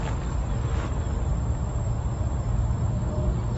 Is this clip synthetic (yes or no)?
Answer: no